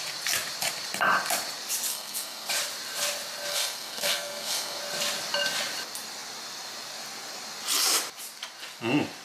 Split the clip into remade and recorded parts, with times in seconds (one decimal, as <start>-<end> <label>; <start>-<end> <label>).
0.0-1.9 recorded; 1.9-2.5 remade; 2.5-3.5 recorded; 3.5-4.8 remade; 4.8-9.2 recorded